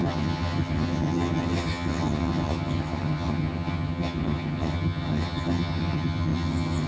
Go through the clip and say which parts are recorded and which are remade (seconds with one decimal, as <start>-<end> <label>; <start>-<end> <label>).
0.0-6.9 remade